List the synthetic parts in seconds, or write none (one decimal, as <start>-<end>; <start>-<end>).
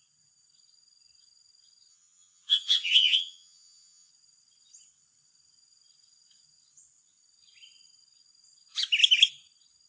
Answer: 1.9-4.1